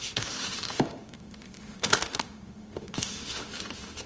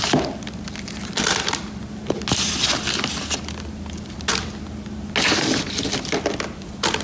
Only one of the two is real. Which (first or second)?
second